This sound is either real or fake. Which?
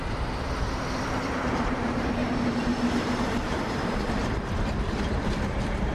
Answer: fake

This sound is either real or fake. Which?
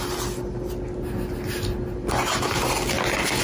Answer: real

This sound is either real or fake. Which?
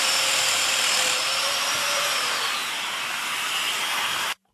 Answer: fake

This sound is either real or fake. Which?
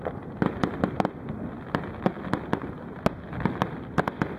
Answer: real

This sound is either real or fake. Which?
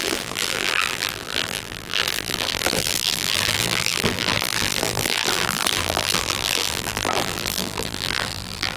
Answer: fake